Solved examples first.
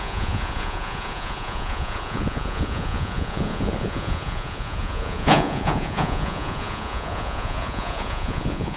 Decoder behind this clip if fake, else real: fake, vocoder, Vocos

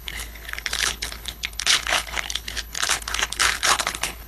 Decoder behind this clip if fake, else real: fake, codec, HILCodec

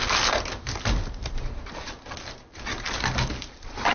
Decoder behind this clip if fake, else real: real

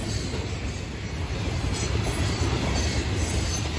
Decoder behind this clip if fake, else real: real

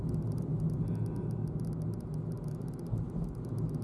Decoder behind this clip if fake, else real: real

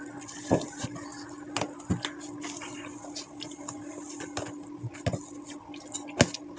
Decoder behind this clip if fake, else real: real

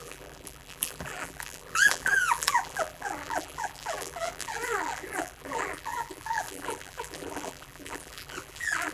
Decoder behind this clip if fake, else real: fake, vocoder, BigVGAN v2